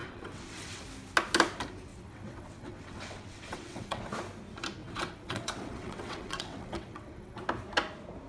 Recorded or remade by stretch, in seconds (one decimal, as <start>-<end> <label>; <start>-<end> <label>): 0.0-0.8 remade; 0.8-1.9 recorded; 1.9-4.0 remade; 4.0-4.8 recorded; 4.8-7.4 remade; 7.4-8.3 recorded

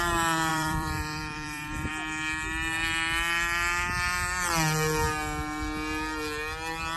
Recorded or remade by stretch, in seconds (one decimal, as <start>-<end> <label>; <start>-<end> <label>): 0.0-0.5 recorded; 0.5-1.9 remade; 1.9-7.0 recorded

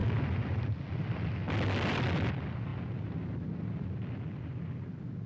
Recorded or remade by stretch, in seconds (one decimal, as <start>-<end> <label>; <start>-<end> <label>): 0.0-5.3 recorded

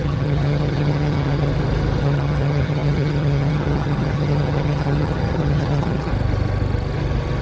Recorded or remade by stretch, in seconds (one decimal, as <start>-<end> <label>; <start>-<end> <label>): 0.0-1.5 remade; 1.5-2.0 recorded; 2.0-6.1 remade; 6.1-7.4 recorded

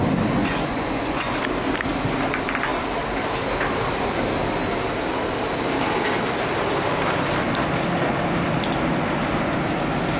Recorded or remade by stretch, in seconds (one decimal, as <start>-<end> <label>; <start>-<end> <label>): 0.0-0.4 recorded; 0.4-1.3 remade; 1.3-10.2 recorded

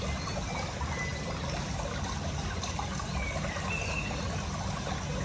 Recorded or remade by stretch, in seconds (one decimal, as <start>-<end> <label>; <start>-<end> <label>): 0.0-5.2 recorded

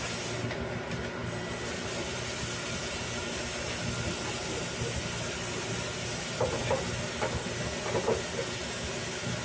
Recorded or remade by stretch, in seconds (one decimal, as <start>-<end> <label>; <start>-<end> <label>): 0.0-9.4 recorded

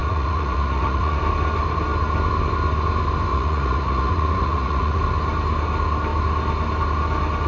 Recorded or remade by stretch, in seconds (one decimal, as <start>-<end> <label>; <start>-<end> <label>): 0.0-1.2 remade; 1.2-3.3 recorded; 3.3-5.0 remade; 5.0-7.5 recorded